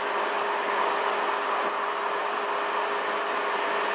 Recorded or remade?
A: recorded